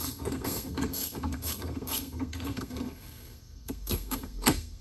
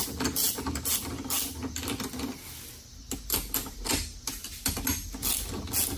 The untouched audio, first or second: second